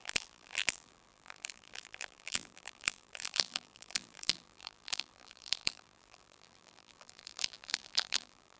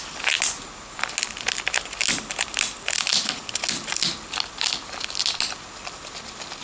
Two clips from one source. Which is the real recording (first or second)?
second